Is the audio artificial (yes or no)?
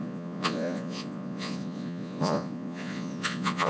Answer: yes